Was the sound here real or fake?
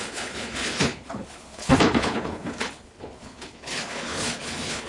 fake